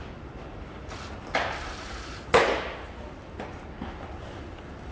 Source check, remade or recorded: recorded